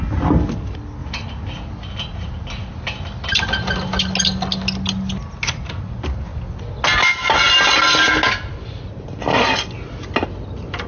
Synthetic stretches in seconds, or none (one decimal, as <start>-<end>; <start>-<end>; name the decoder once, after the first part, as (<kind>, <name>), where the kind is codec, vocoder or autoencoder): none